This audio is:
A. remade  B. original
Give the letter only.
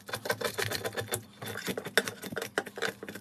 B